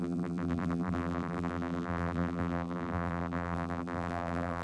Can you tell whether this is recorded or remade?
remade